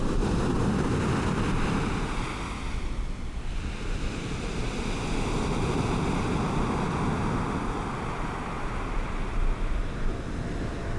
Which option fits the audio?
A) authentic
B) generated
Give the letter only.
A